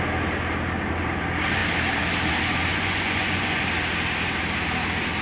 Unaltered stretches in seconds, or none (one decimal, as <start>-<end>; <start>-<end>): 0.0-2.7; 3.6-5.2